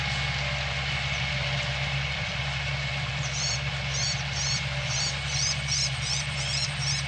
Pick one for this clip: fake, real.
fake